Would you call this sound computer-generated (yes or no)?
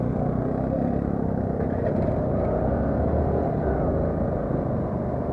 no